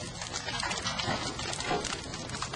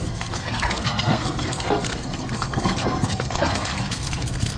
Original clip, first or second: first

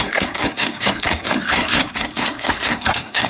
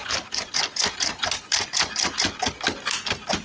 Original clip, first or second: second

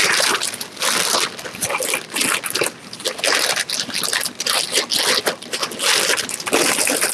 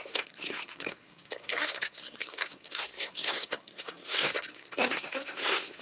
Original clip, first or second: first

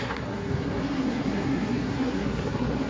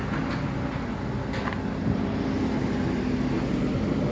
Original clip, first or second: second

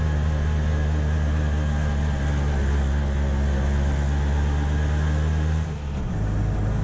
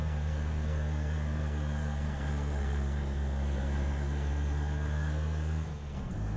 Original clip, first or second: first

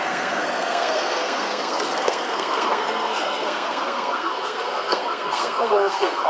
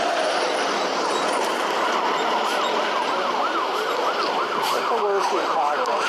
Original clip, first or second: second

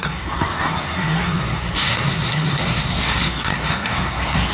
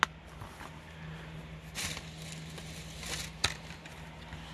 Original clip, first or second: second